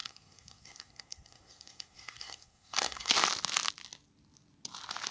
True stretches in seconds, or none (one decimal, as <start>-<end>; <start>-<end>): 3.1-5.1